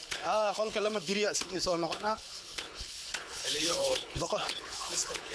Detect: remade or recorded remade